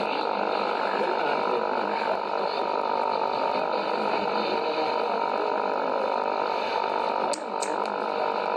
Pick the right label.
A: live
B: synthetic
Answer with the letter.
A